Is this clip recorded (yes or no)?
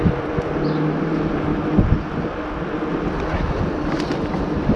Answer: yes